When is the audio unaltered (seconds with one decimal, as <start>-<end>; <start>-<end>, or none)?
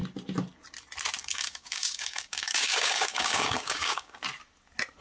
0.0-1.2; 4.2-5.0